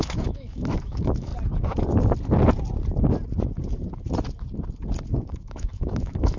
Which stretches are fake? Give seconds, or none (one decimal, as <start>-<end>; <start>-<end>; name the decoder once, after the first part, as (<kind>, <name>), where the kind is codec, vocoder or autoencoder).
0.0-1.3 (autoencoder, DAC-VAE); 5.1-6.4